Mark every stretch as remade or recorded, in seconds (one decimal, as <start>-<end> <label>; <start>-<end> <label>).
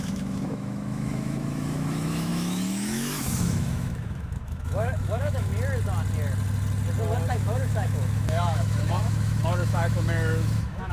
0.0-5.5 remade; 5.5-7.3 recorded; 7.3-10.9 remade